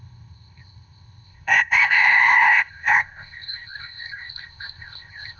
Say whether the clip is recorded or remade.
remade